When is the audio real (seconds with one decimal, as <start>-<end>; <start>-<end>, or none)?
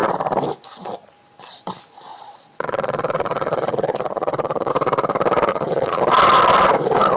0.0-2.1; 4.7-5.5; 6.0-7.2